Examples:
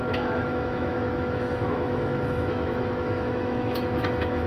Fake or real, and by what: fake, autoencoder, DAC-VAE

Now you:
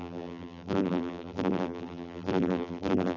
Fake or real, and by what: fake, vocoder, BigVGAN v2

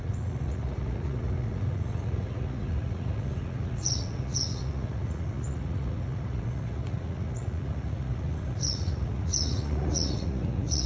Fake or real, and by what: fake, vocoder, Vocos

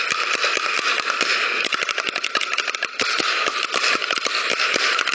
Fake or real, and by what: real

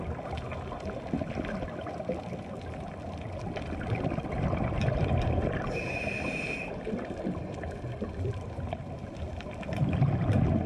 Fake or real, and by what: real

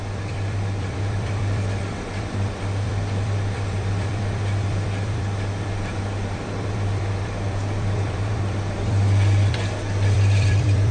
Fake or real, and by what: fake, vocoder, BigVGAN v2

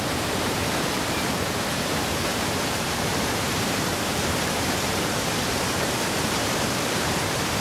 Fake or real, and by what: fake, vocoder, BigVGAN v2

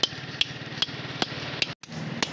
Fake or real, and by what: real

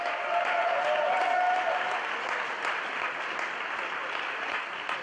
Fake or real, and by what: real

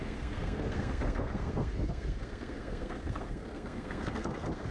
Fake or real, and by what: fake, codec, SNAC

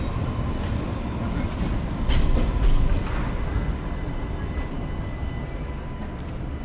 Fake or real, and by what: real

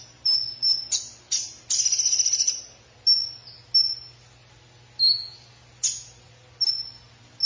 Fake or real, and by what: real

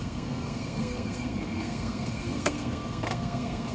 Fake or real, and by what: fake, codec, SNAC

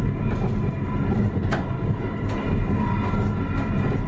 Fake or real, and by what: real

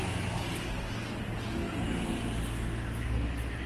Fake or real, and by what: real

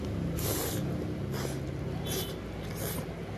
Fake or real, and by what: real